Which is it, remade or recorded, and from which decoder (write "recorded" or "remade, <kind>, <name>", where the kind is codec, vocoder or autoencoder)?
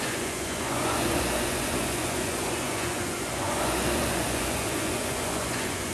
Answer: remade, vocoder, Vocos